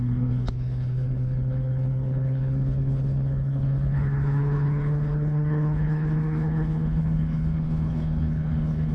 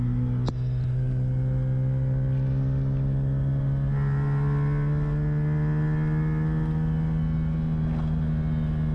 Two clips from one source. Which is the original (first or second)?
second